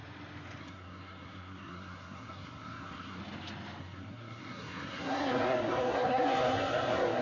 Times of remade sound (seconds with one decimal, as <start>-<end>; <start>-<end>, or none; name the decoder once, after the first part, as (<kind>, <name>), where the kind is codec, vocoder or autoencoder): 0.6-3.2 (codec, SNAC); 3.8-7.2